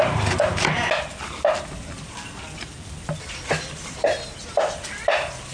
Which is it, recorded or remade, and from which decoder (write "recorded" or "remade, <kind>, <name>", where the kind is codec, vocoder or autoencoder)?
recorded